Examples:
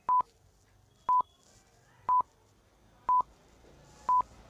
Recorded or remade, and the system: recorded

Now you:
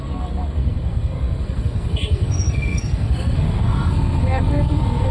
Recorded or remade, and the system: remade, codec, SNAC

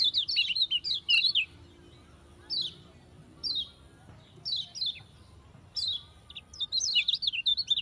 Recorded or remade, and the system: recorded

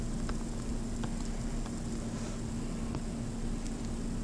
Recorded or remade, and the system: recorded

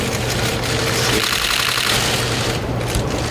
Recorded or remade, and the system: remade, vocoder, BigVGAN v2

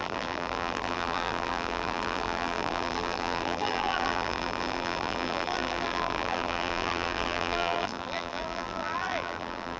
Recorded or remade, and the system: remade, vocoder, BigVGAN v2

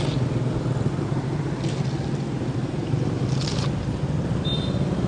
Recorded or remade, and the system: recorded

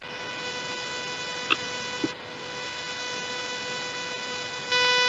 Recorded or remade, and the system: recorded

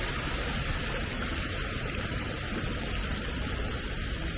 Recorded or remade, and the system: recorded